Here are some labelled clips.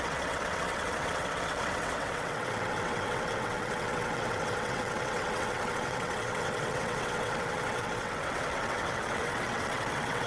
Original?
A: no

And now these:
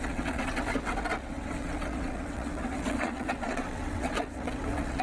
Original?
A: no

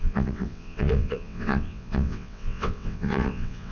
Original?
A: no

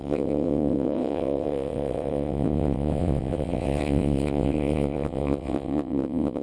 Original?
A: no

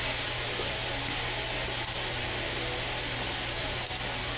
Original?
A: yes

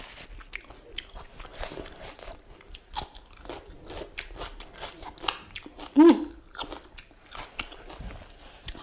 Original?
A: yes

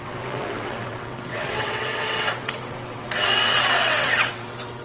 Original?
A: no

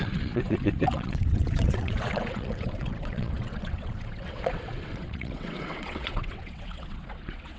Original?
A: no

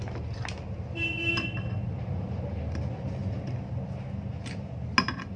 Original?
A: yes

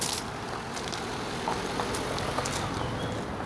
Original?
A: yes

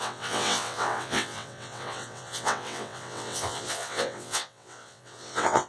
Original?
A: no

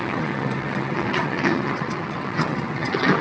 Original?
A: no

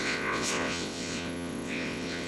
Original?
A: no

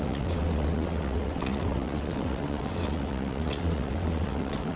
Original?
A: no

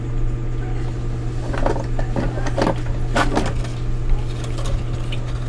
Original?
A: yes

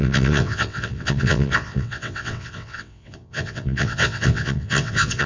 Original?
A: no